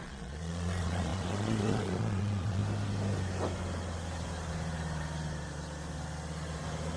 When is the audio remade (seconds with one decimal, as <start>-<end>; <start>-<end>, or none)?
0.0-2.6